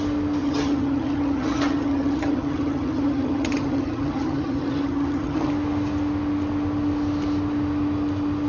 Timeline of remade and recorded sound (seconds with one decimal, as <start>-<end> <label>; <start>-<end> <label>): 0.0-0.4 recorded; 0.4-5.5 remade; 5.5-8.5 recorded